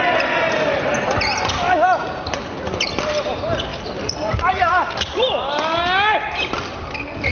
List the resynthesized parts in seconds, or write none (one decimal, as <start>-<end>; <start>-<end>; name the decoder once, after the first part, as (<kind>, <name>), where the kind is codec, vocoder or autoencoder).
3.7-5.5 (vocoder, BigVGAN v2)